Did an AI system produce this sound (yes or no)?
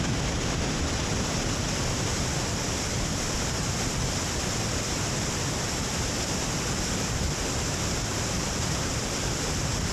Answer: no